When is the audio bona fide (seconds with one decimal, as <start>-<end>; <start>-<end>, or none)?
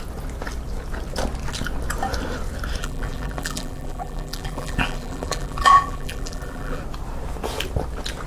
0.0-2.8; 6.8-8.3